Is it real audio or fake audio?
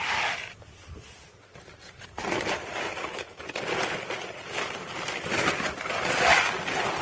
real